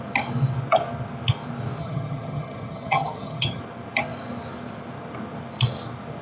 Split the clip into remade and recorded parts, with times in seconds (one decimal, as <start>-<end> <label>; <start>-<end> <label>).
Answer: 0.0-1.8 recorded; 1.8-3.6 remade; 3.6-6.2 recorded